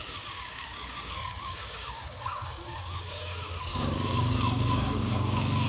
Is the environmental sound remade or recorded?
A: remade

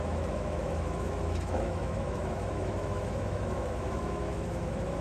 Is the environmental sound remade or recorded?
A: remade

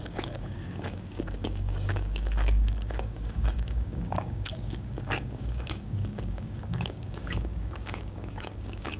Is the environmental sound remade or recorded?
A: remade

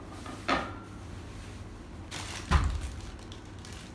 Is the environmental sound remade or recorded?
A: recorded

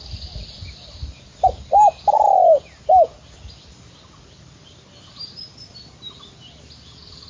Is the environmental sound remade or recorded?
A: recorded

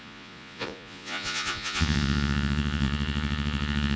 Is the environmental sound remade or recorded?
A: remade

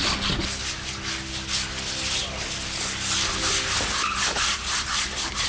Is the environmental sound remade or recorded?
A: recorded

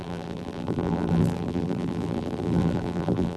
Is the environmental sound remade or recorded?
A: remade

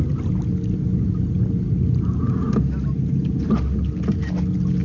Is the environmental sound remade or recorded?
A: recorded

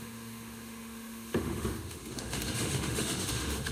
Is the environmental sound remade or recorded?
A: remade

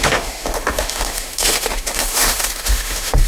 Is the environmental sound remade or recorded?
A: remade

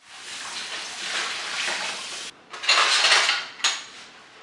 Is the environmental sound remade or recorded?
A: recorded